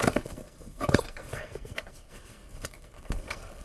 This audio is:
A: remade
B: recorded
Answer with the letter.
A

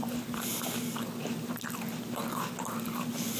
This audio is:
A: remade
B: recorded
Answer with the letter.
B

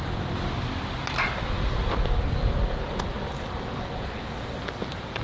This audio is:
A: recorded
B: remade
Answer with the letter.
A